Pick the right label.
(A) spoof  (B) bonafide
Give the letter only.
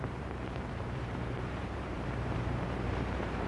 A